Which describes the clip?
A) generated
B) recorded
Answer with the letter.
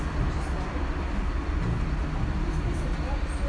B